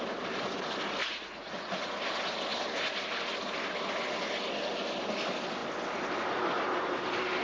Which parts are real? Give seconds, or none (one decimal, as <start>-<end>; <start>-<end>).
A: 0.0-1.0; 1.9-7.4